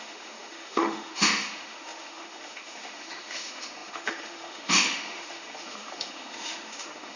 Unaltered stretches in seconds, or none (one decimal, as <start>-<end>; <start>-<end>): none

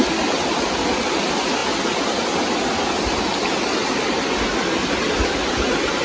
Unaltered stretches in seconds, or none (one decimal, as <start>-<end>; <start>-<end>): 0.0-6.0

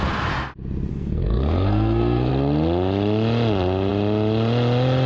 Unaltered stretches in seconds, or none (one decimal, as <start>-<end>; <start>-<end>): 0.0-0.9; 2.3-5.1

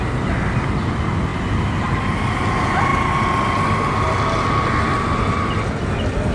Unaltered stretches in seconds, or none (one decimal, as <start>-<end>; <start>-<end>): 0.0-6.3

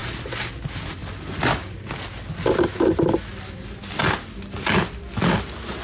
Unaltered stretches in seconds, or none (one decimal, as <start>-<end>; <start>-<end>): 0.0-5.8

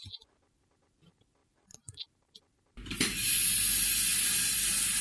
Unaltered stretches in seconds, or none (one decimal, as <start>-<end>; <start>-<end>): 0.0-5.0

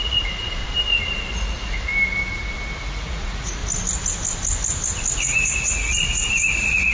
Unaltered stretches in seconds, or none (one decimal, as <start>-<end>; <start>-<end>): 0.6-1.3; 1.9-2.8; 3.6-5.2

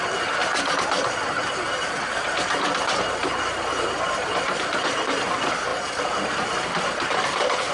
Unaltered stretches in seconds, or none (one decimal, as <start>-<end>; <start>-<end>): 0.0-5.7